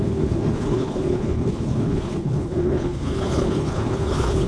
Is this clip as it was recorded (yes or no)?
no